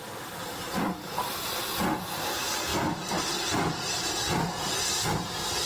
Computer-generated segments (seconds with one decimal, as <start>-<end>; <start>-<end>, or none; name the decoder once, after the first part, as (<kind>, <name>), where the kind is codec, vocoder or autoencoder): none